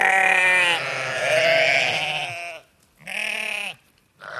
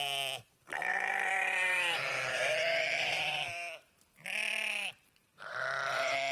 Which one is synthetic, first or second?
second